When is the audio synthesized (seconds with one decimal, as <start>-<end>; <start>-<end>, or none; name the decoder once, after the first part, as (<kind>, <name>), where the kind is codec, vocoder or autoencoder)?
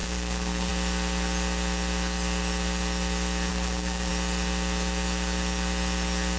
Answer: 0.0-0.7 (codec, SNAC); 3.5-4.1